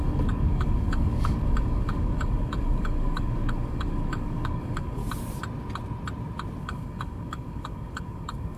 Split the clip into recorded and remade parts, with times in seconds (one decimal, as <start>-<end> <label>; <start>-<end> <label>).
0.0-5.0 remade; 5.0-6.6 recorded; 6.6-8.6 remade